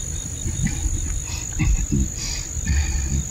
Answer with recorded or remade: recorded